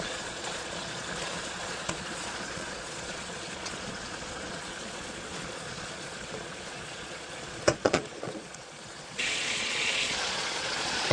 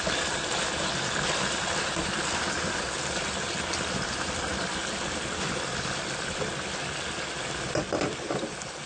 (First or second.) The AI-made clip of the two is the first